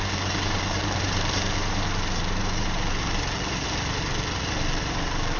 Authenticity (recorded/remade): remade